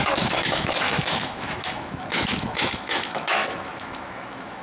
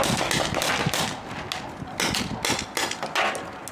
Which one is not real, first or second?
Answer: first